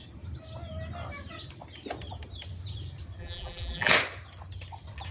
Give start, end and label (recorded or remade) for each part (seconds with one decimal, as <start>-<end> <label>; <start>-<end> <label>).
0.0-3.2 recorded; 3.2-3.9 remade; 3.9-5.1 recorded

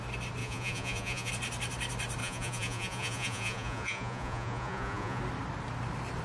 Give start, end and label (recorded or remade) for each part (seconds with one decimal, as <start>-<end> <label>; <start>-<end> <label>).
0.0-0.4 recorded; 0.4-1.3 remade; 1.3-2.2 recorded; 2.2-5.2 remade; 5.2-6.2 recorded

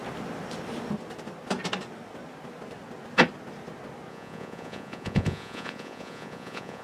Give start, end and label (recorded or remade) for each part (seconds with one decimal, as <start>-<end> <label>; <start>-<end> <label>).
0.0-4.1 recorded; 4.1-6.8 remade

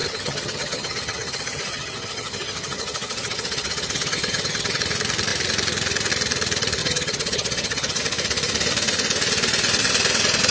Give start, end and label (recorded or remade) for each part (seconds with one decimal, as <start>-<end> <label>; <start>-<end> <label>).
0.0-4.8 remade; 4.8-6.8 recorded; 6.8-8.0 remade; 8.0-10.5 recorded

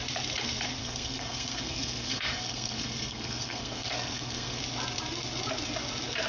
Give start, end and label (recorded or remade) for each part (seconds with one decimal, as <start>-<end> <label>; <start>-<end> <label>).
0.0-0.8 recorded; 0.8-4.6 remade; 4.6-6.3 recorded

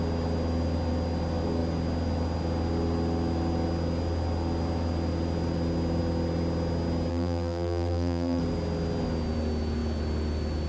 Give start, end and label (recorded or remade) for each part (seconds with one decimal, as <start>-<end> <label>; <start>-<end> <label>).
0.0-7.1 recorded; 7.1-8.4 remade; 8.4-10.7 recorded